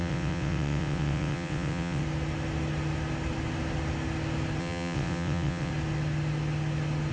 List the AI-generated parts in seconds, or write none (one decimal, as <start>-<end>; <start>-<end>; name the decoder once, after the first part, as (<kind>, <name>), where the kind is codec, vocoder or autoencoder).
0.0-2.0 (vocoder, WaveNeXt); 4.6-5.7